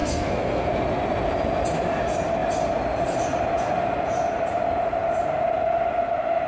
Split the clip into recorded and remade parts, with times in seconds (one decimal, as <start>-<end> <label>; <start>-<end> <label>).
0.0-0.7 remade; 0.7-6.5 recorded